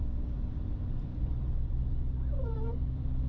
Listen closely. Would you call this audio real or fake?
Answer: fake